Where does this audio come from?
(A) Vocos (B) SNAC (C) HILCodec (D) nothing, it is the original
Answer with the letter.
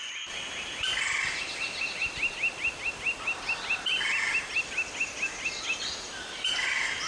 D